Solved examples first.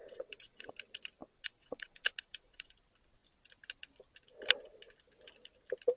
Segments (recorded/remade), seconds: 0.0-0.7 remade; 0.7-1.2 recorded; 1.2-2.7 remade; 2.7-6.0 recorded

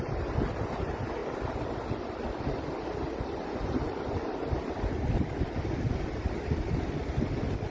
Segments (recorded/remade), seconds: 0.0-7.7 recorded

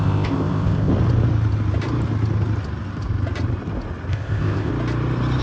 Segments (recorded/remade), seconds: 0.0-0.9 remade; 0.9-4.1 recorded; 4.1-4.7 remade; 4.7-5.4 recorded